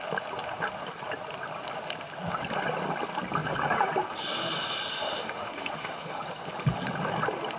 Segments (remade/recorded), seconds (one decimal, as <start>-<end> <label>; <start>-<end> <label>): 0.0-4.9 recorded; 4.9-6.3 remade; 6.3-7.6 recorded